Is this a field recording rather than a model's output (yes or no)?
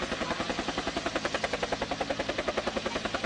yes